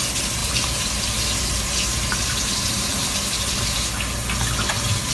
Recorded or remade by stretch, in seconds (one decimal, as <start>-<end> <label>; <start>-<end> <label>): 0.0-0.4 recorded; 0.4-3.5 remade; 3.5-5.1 recorded